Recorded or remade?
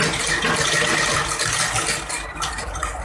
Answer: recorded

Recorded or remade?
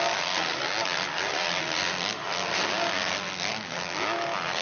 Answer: recorded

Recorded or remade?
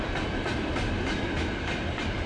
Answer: remade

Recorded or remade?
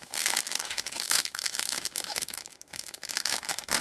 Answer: remade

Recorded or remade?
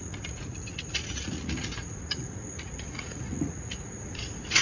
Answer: remade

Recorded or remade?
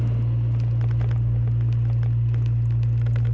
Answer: recorded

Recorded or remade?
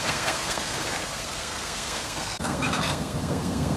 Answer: remade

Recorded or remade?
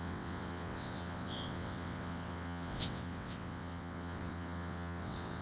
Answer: remade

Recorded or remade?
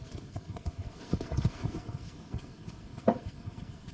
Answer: remade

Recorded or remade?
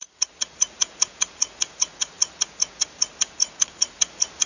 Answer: remade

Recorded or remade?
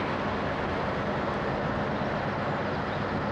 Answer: recorded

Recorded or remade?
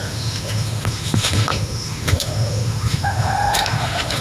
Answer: remade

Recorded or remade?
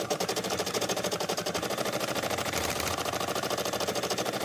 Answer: remade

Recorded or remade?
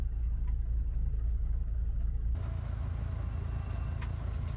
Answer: recorded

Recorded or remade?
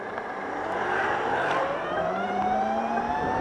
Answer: remade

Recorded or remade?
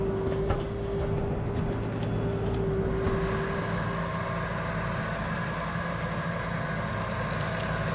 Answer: recorded